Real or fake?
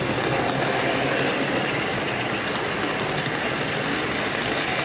real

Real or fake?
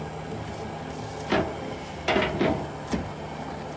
real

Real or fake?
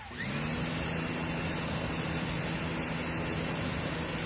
real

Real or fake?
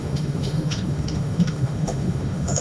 fake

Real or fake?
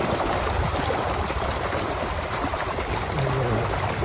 fake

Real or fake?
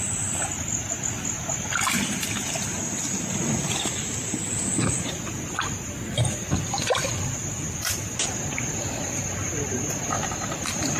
real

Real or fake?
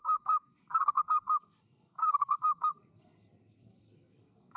fake